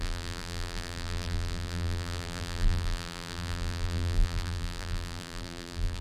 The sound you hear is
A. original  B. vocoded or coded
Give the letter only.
B